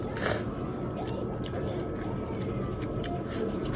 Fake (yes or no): yes